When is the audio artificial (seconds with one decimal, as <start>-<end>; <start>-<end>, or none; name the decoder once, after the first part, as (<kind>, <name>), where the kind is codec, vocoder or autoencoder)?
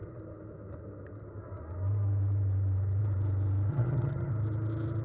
3.7-4.3 (vocoder, HiFi-GAN)